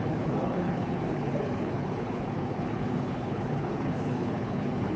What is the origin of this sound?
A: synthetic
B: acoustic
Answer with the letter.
A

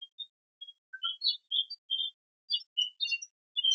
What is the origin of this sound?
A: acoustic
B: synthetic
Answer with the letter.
A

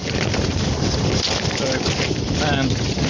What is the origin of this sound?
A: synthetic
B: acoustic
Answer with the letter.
A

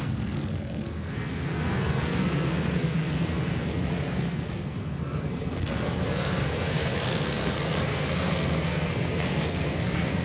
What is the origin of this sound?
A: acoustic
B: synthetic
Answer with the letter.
B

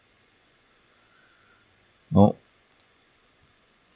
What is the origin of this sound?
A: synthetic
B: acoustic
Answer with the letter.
A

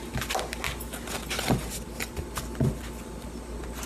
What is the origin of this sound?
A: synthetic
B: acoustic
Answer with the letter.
B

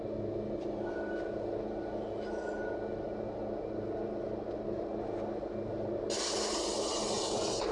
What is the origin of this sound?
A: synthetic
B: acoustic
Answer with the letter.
B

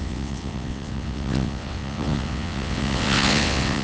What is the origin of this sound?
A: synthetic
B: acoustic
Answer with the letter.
A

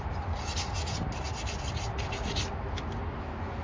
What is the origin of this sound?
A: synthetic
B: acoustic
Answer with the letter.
B